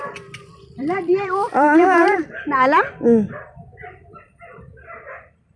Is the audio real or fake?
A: fake